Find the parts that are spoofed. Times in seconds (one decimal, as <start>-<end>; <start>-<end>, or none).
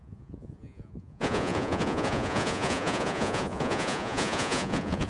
0.0-5.1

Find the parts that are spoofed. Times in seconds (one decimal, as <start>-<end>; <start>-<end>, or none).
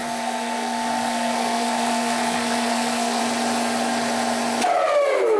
0.0-3.2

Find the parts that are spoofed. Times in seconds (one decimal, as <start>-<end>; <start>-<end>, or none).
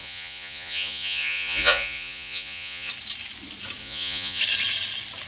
0.0-2.9; 3.8-4.4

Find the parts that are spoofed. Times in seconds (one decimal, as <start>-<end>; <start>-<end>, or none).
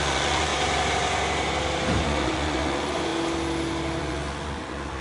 0.0-0.5; 2.0-3.1; 4.0-5.0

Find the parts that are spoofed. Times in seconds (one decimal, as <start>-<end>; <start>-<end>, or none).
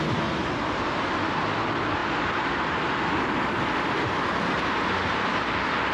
none